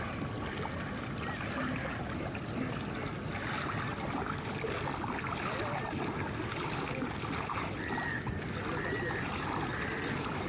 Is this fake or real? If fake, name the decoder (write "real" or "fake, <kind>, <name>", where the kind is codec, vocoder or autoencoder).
real